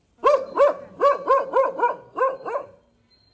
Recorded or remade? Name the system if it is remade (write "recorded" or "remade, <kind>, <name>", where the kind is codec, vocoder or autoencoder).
recorded